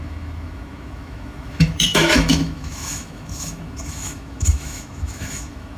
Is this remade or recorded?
remade